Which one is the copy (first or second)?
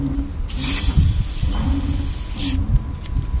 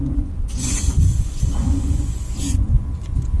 second